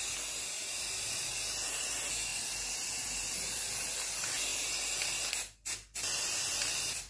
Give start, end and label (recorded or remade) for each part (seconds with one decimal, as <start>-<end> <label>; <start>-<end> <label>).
0.0-0.6 recorded; 0.6-1.3 remade; 1.3-7.1 recorded